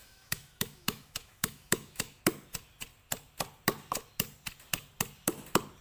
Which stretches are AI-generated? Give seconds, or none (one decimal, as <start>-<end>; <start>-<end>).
0.0-2.2